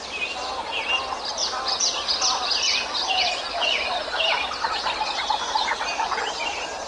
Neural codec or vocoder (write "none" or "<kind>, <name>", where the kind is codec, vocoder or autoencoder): none